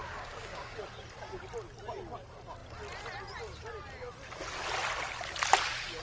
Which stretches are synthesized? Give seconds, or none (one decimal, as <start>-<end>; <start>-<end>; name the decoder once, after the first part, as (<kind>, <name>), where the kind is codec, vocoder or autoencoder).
0.0-0.8 (codec, DAC)